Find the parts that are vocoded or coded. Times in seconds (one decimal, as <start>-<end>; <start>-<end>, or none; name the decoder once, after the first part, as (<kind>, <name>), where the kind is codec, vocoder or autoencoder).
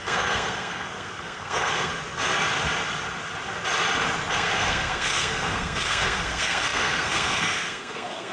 0.0-1.9 (codec, SNAC); 4.3-8.3